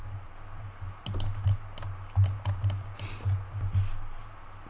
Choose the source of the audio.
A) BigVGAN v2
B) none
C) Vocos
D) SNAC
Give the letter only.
B